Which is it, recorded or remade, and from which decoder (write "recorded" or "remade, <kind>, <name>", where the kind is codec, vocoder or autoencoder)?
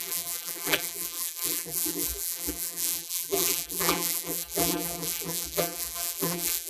remade, vocoder, BigVGAN v2